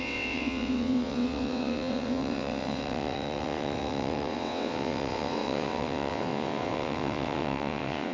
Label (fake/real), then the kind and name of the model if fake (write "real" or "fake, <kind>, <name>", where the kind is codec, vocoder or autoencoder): fake, vocoder, WaveNeXt